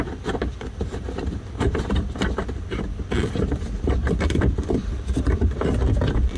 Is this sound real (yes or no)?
no